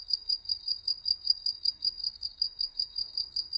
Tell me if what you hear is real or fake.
fake